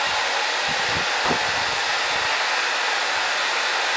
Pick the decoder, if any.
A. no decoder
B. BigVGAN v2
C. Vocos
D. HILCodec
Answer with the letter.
A